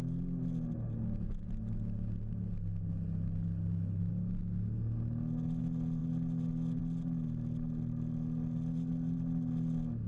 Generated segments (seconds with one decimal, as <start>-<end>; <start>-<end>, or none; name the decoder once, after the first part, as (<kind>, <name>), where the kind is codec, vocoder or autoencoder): none